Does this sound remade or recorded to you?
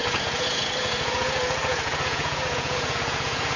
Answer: remade